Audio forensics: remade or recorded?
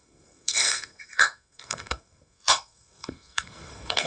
remade